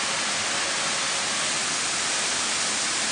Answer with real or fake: real